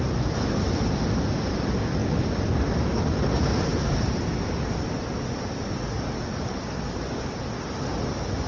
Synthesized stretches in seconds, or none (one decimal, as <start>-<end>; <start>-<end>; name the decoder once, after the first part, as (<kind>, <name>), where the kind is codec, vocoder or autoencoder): none

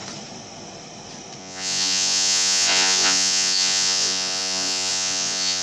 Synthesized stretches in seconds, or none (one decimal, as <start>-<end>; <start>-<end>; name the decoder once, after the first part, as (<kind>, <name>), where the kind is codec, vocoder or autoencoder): 1.4-5.6 (vocoder, Vocos)

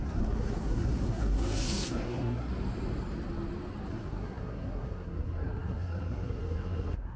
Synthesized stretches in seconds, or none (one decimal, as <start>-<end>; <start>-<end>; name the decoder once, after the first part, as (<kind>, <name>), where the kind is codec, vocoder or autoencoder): 0.0-2.5 (codec, SNAC); 3.9-7.2

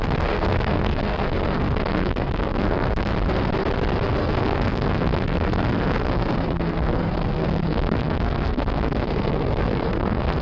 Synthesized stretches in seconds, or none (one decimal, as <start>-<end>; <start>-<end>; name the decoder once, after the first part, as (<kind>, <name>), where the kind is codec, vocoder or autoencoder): 0.0-3.1 (codec, SNAC); 4.2-10.4

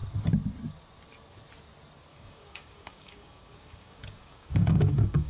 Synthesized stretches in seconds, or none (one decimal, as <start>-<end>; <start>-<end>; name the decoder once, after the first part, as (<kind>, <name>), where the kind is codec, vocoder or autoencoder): 2.1-5.3 (codec, DAC)

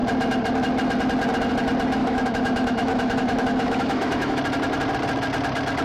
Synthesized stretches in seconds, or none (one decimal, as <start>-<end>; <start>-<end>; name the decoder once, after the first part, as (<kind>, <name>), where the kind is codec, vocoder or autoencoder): 2.0-4.4 (autoencoder, DAC-VAE)

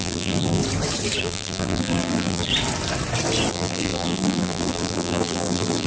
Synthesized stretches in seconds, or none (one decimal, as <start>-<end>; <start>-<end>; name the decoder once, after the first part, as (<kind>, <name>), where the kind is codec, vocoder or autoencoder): 0.0-0.6 (vocoder, BigVGAN v2); 1.2-2.5; 3.5-5.9

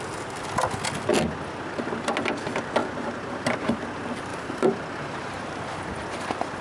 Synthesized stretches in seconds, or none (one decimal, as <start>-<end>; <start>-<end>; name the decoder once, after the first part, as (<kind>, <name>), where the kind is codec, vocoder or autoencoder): 2.8-3.8 (vocoder, BigVGAN v2); 4.3-5.3